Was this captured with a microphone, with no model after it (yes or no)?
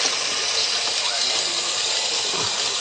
yes